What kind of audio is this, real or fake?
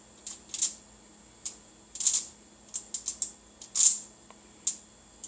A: real